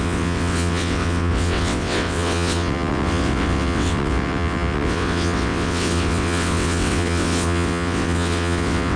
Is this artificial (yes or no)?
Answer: yes